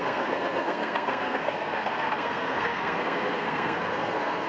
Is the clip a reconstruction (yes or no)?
yes